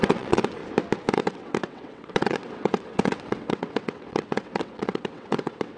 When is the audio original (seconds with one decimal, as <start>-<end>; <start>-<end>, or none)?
0.6-1.1